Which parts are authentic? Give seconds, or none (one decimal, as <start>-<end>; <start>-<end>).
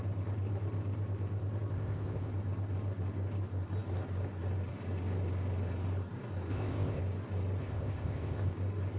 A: 0.0-1.7; 2.3-6.5; 7.0-7.6; 8.5-9.0